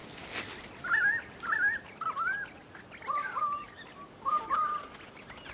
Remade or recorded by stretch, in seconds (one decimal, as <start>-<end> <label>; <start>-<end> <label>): 0.0-3.2 recorded; 3.2-3.8 remade; 3.8-5.5 recorded

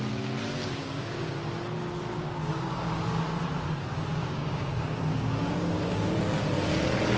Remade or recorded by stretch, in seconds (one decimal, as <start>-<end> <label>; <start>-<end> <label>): 0.0-0.8 recorded; 0.8-1.3 remade; 1.3-2.1 recorded; 2.1-3.2 remade; 3.2-4.1 recorded; 4.1-6.1 remade; 6.1-7.2 recorded